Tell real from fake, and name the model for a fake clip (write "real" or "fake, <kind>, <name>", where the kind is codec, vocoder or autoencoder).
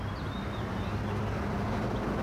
real